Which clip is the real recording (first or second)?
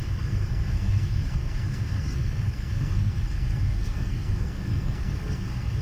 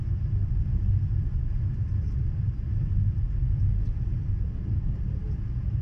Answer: second